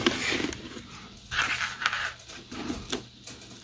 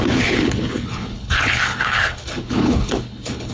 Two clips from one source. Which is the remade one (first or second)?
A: second